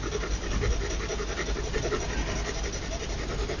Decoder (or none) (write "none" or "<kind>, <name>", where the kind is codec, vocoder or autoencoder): none